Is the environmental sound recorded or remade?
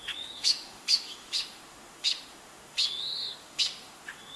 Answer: remade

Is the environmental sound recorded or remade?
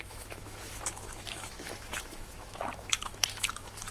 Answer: remade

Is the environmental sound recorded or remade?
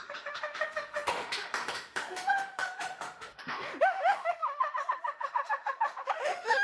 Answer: remade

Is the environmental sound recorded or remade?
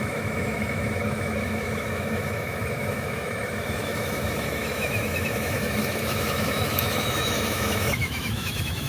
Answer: remade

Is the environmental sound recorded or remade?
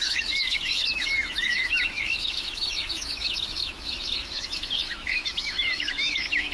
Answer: remade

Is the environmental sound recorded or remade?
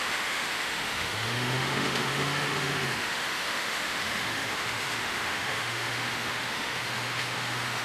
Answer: remade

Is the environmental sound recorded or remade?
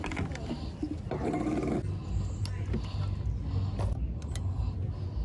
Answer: recorded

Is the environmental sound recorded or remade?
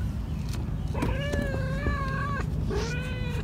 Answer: recorded